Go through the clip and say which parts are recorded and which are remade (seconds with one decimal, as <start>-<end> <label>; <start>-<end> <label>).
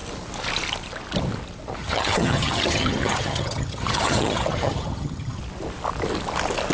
0.0-1.8 recorded; 1.8-5.4 remade; 5.4-6.7 recorded